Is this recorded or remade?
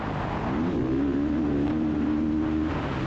recorded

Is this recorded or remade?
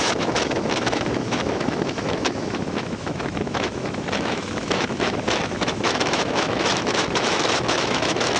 remade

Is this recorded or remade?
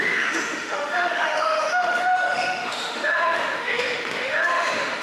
remade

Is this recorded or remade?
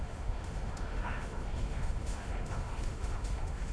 remade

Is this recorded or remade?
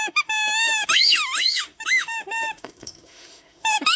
remade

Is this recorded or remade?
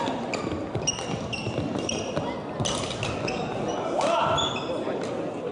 recorded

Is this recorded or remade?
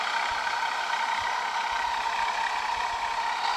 recorded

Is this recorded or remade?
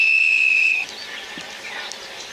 recorded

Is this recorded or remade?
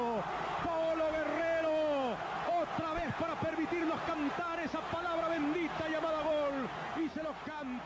recorded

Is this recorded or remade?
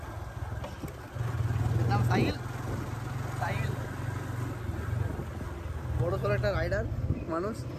recorded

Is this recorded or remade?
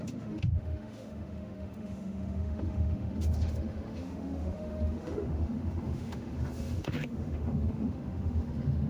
remade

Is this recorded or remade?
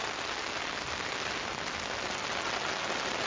recorded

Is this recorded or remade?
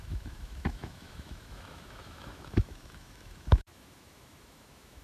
remade